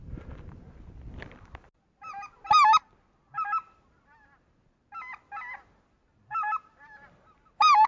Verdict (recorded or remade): recorded